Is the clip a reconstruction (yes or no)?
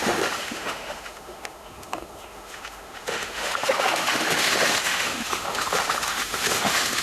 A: yes